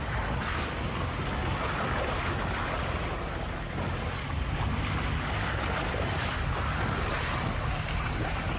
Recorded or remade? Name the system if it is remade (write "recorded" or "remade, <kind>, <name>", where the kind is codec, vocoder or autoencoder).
recorded